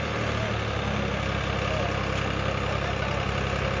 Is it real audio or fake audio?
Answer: real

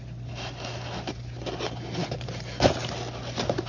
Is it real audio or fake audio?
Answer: real